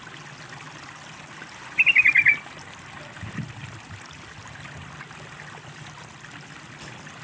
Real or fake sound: real